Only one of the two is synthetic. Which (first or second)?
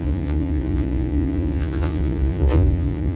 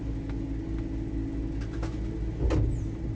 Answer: first